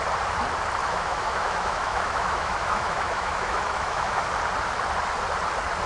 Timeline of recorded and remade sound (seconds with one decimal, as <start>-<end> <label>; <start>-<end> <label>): 0.0-0.8 recorded; 0.8-4.3 remade; 4.3-5.9 recorded

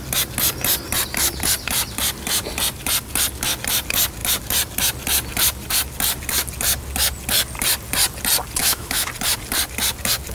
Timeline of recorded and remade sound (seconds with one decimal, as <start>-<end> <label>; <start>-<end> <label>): 0.0-8.6 recorded; 8.6-9.1 remade; 9.1-10.3 recorded

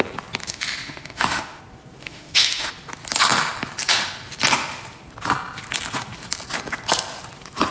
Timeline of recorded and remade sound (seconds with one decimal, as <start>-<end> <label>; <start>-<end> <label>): 0.0-0.4 recorded; 0.4-1.6 remade; 1.6-2.0 recorded; 2.0-2.7 remade; 2.7-7.7 recorded

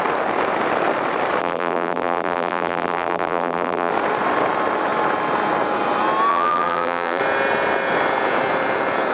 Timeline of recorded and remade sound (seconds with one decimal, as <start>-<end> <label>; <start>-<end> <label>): 0.0-1.4 recorded; 1.4-3.9 remade; 3.9-6.3 recorded; 6.3-7.2 remade; 7.2-9.1 recorded

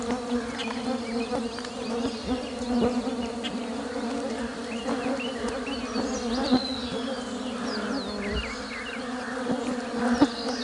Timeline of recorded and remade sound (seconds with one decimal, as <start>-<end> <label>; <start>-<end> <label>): 0.0-10.6 recorded

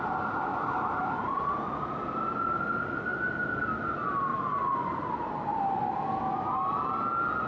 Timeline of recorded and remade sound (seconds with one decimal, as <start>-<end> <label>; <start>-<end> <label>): 0.0-4.3 recorded; 4.3-5.8 remade; 5.8-7.5 recorded

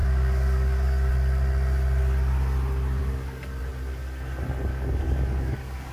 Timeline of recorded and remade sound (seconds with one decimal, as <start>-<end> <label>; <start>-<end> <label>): 0.0-1.1 remade; 1.1-3.0 recorded; 3.0-3.6 remade; 3.6-4.7 recorded; 4.7-5.9 remade

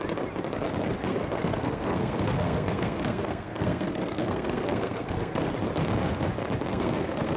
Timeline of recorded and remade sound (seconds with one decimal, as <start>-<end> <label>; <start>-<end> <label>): 0.0-1.1 recorded; 1.1-5.5 remade; 5.5-6.7 recorded; 6.7-7.4 remade